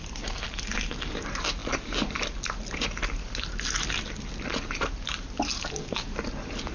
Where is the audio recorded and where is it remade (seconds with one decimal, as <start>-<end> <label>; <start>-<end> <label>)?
0.0-6.7 recorded